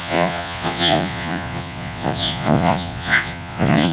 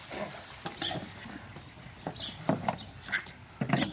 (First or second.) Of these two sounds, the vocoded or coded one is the first